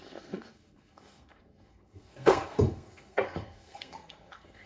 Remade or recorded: remade